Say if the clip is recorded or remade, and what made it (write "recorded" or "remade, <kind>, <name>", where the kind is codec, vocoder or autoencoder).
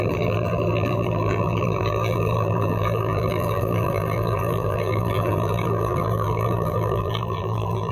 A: remade, vocoder, BigVGAN v2